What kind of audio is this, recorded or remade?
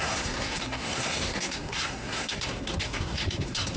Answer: remade